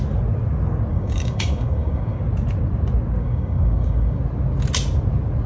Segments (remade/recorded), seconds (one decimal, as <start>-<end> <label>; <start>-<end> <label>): 0.0-0.9 recorded; 0.9-2.2 remade; 2.2-3.2 recorded; 3.2-4.2 remade; 4.2-5.5 recorded